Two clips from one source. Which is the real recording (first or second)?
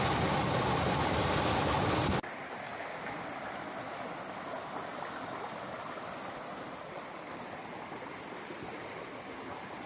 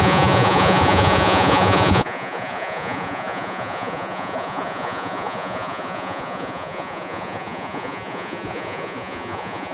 first